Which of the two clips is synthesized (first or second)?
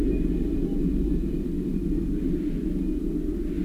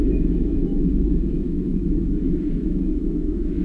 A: second